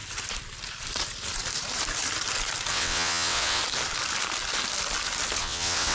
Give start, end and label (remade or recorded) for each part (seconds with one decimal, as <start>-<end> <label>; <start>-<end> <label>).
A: 0.0-2.7 recorded; 2.7-3.6 remade; 3.6-5.4 recorded; 5.4-5.9 remade